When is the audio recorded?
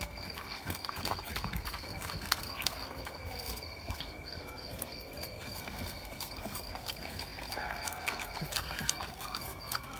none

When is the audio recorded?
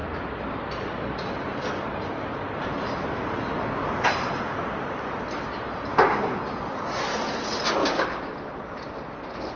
0.0-5.9; 6.4-7.8; 8.3-9.6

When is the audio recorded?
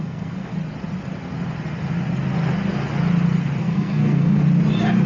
0.5-3.6; 4.4-5.1